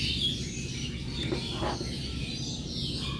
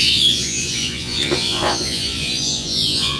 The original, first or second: first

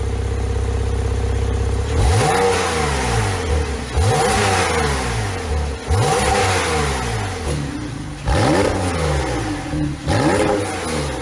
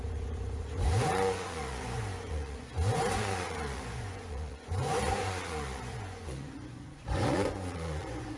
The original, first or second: first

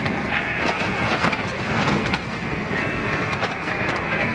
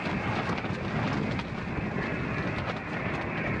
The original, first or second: second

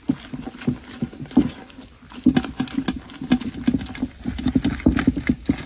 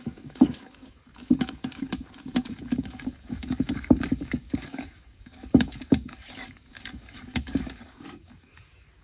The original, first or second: first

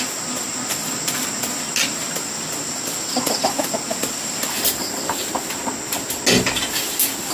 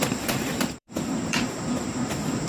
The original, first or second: first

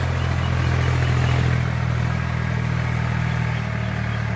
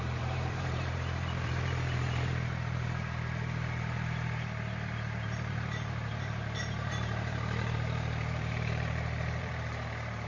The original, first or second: first